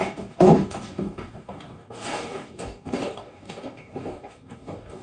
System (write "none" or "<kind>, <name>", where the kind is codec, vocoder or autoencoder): codec, DAC